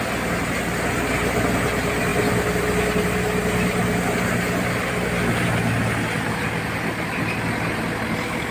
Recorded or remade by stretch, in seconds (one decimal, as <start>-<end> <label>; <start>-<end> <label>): 0.0-8.5 recorded